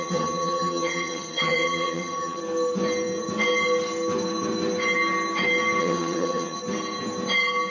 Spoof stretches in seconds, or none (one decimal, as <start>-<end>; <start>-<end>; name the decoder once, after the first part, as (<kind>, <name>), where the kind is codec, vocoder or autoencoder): 0.0-2.4 (vocoder, HiFi-GAN); 5.8-6.6